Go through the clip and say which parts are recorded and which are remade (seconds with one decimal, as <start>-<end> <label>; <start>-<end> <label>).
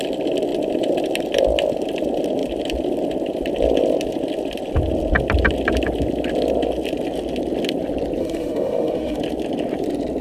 0.0-8.2 recorded; 8.2-9.2 remade; 9.2-10.2 recorded